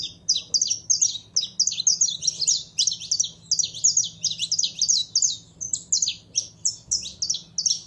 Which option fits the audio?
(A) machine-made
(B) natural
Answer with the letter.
B